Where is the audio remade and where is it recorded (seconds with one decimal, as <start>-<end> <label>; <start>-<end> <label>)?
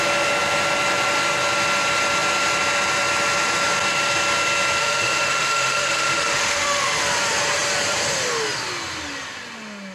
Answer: 0.0-4.8 recorded; 4.8-7.0 remade; 7.0-9.9 recorded